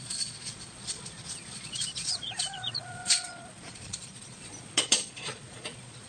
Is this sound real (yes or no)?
no